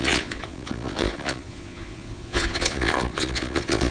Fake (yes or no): yes